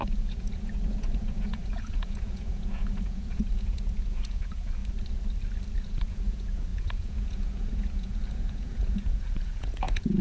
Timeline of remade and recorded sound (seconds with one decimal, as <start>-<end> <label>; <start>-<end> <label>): 0.0-4.8 remade; 4.8-5.8 recorded; 5.8-10.2 remade